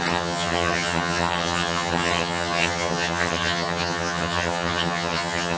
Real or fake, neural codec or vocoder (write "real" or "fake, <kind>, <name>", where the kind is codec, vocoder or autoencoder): fake, vocoder, HiFi-GAN